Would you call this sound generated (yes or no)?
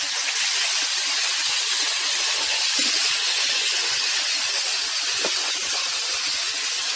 yes